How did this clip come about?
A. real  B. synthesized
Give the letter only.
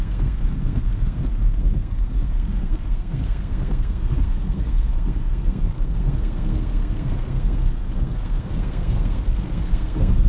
B